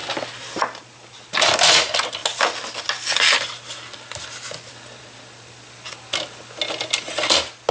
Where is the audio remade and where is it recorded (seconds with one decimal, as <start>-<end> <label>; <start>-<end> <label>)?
0.0-7.7 recorded